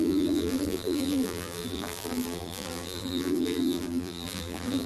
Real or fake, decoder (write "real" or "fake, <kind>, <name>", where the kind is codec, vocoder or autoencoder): fake, vocoder, BigVGAN v2